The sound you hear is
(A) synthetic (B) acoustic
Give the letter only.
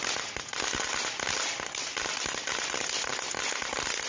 B